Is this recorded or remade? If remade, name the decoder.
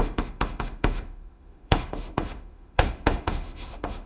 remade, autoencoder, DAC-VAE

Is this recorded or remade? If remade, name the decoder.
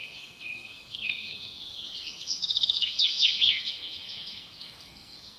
remade, codec, SNAC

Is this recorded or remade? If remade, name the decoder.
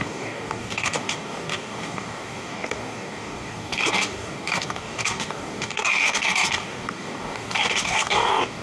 remade, codec, DAC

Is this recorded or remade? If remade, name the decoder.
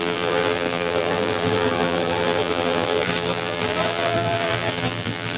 remade, vocoder, BigVGAN v2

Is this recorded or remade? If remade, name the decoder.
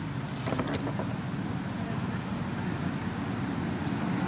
recorded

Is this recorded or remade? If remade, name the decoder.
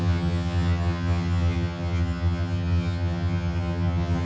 remade, vocoder, HiFi-GAN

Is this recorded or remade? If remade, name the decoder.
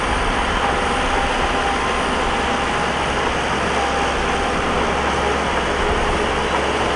recorded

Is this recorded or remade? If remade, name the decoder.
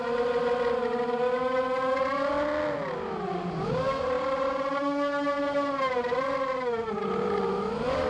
recorded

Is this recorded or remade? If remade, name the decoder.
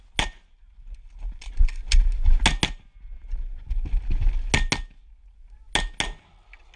recorded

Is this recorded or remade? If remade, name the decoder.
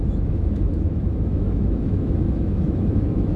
remade, autoencoder, DAC-VAE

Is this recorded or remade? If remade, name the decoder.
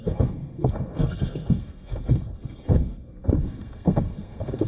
remade, codec, SNAC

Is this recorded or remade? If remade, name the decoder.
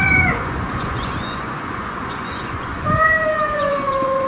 remade, vocoder, Vocos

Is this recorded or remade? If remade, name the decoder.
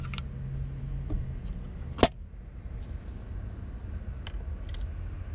recorded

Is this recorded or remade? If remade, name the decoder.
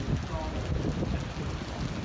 recorded